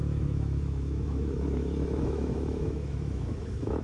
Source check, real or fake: fake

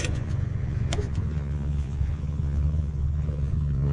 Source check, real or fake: fake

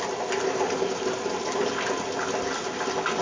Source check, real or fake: real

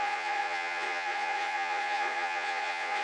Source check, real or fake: fake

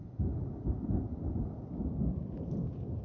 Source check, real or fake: real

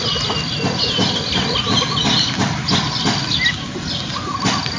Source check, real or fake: real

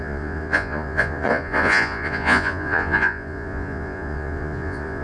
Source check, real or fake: fake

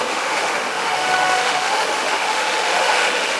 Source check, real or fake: fake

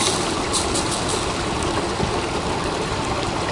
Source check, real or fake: real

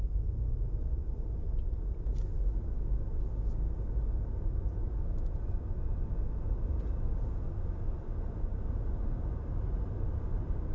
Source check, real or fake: real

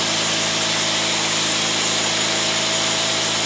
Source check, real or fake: fake